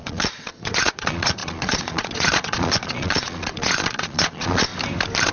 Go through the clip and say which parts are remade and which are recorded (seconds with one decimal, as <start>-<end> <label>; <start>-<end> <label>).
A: 0.0-4.7 remade; 4.7-5.3 recorded